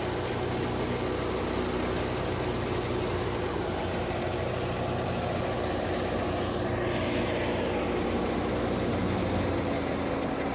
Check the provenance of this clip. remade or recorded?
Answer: recorded